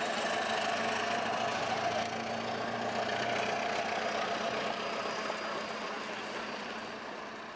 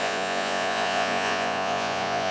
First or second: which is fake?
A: second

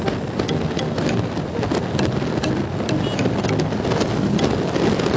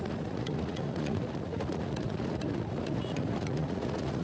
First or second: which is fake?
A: second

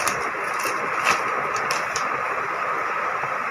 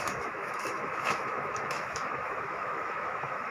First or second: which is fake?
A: second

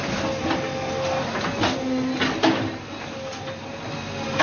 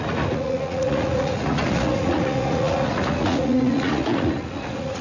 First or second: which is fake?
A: second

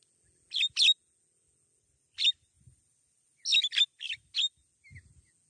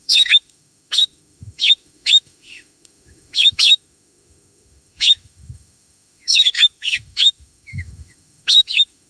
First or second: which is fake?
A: second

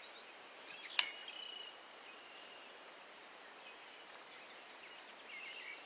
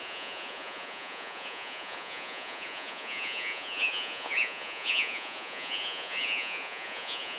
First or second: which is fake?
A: second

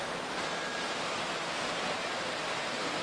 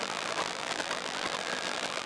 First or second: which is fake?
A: second